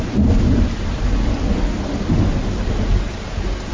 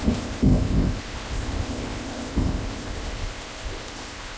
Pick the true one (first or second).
first